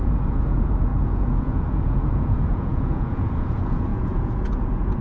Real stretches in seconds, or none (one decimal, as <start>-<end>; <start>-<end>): none